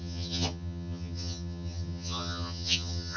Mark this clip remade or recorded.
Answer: remade